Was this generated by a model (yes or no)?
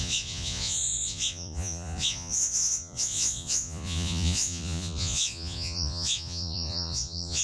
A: yes